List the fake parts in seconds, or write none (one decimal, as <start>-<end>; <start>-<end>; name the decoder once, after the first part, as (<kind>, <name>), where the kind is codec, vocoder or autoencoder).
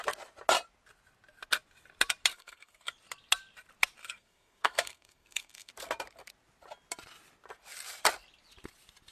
2.3-2.9 (codec, SNAC); 4.0-5.7